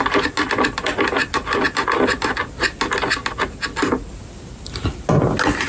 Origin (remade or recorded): recorded